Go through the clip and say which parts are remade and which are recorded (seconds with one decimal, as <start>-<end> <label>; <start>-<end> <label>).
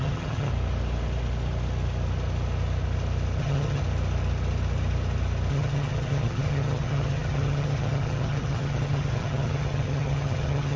0.0-0.5 remade; 0.5-3.4 recorded; 3.4-3.8 remade; 3.8-5.5 recorded; 5.5-10.8 remade